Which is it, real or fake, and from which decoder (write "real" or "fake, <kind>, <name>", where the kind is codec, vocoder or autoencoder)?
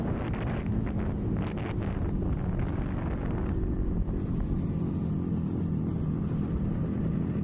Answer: real